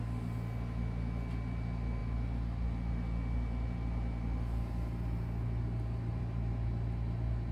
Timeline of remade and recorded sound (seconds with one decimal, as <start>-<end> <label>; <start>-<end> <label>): 0.0-7.5 recorded